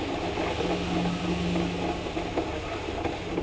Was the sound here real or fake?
real